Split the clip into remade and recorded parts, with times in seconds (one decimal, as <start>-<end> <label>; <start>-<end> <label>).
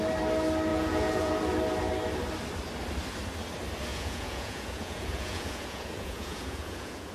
0.0-0.7 recorded; 0.7-1.3 remade; 1.3-3.9 recorded; 3.9-7.1 remade